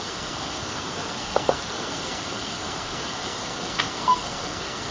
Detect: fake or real fake